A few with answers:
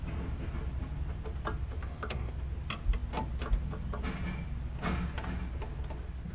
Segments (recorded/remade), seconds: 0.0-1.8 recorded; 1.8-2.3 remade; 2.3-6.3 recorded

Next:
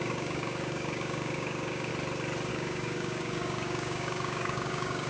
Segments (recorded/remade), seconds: 0.0-1.9 remade; 1.9-2.5 recorded; 2.5-5.1 remade

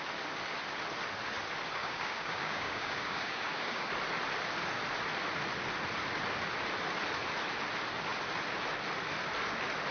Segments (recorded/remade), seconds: 0.0-1.8 recorded; 1.8-3.9 remade; 3.9-9.9 recorded

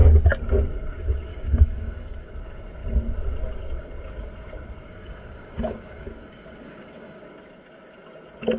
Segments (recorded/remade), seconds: 0.0-1.3 recorded; 1.3-2.3 remade; 2.3-4.8 recorded; 4.8-7.2 remade; 7.2-8.6 recorded

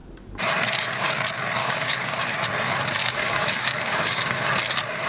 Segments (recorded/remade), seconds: 0.0-1.6 recorded; 1.6-2.2 remade; 2.2-3.0 recorded; 3.0-4.4 remade; 4.4-5.1 recorded

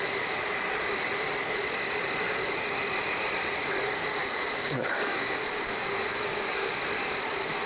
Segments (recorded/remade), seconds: 0.0-4.2 recorded; 4.2-6.7 remade; 6.7-7.7 recorded

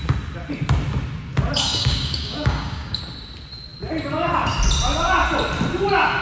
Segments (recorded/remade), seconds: 0.0-1.7 recorded; 1.7-3.0 remade; 3.0-6.2 recorded